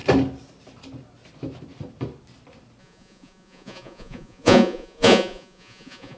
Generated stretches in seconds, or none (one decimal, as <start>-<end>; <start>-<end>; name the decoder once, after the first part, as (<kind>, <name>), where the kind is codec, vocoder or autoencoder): 2.8-6.2 (vocoder, Vocos)